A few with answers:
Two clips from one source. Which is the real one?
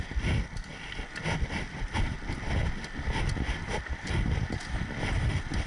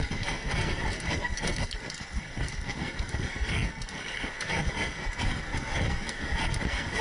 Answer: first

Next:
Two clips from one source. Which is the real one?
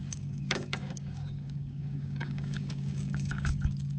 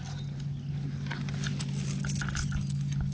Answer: second